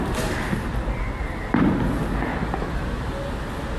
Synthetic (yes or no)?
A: no